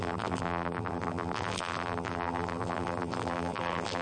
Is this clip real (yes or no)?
no